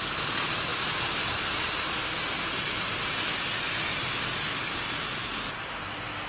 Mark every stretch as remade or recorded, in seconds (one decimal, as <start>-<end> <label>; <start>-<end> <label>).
0.0-6.3 recorded